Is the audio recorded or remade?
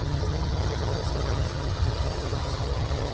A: remade